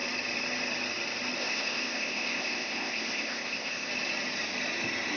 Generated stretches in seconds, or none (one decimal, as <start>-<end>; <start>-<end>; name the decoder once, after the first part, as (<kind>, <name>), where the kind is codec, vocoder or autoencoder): 1.4-3.9 (codec, ZipCodec)